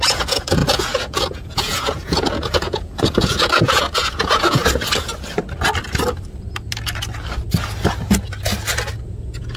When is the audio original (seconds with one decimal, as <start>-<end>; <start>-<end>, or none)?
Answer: 4.6-9.0